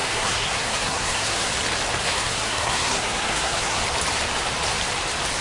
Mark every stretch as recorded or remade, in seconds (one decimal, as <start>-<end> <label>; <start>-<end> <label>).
0.0-1.5 remade; 1.5-2.0 recorded; 2.0-3.8 remade; 3.8-5.4 recorded

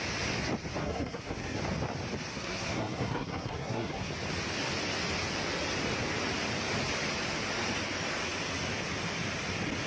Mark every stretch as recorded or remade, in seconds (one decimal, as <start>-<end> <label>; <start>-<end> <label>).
0.0-0.8 recorded; 0.8-1.6 remade; 1.6-2.3 recorded; 2.3-4.1 remade; 4.1-9.9 recorded